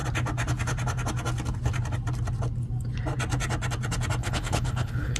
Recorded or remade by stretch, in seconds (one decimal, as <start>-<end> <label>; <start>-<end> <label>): 0.0-4.2 recorded; 4.2-5.2 remade